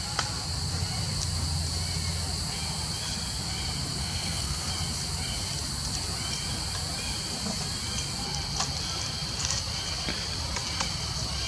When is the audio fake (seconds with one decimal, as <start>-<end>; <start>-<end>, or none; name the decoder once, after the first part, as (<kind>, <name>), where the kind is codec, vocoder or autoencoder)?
4.0-4.7 (codec, SNAC)